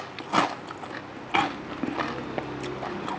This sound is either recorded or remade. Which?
recorded